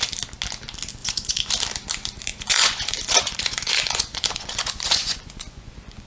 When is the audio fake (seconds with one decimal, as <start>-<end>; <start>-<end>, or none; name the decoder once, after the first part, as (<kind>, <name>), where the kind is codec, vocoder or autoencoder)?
1.0-1.5 (vocoder, Vocos); 2.3-6.1

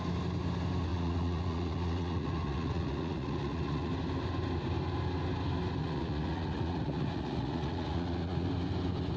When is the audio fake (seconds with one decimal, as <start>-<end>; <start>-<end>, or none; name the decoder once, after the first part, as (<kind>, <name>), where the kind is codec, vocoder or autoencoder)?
0.9-3.9 (vocoder, Vocos); 5.8-8.5

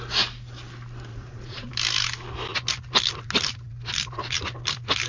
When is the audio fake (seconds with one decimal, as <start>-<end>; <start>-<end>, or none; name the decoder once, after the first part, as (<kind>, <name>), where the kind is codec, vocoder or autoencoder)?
1.1-1.7 (vocoder, Vocos)

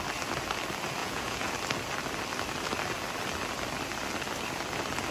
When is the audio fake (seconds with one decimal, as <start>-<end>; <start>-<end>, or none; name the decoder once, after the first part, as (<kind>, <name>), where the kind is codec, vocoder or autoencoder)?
1.0-1.5 (vocoder, Vocos)